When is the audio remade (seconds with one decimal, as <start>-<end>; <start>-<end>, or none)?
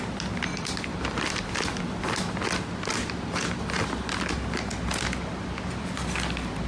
0.9-1.5; 3.0-3.7